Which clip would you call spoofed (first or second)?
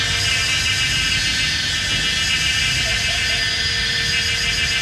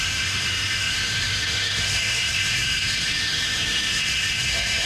second